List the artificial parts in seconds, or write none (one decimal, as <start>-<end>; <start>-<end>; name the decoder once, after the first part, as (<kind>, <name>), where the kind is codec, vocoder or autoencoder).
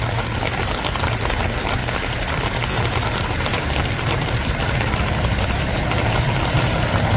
1.8-6.1 (vocoder, BigVGAN v2)